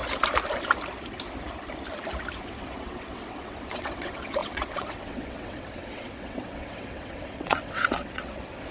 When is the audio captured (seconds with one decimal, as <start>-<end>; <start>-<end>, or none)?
0.0-2.4